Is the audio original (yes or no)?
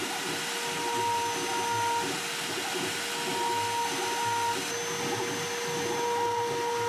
yes